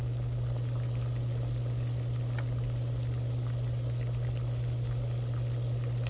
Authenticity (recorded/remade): recorded